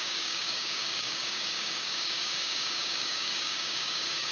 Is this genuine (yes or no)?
no